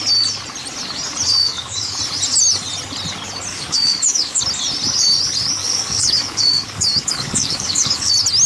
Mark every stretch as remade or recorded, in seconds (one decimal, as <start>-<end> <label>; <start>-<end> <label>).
0.0-1.4 recorded; 1.4-2.0 remade; 2.0-3.5 recorded; 3.5-4.4 remade; 4.4-5.6 recorded; 5.6-8.1 remade; 8.1-8.5 recorded